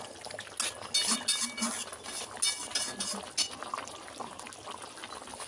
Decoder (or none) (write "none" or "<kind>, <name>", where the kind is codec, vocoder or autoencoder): none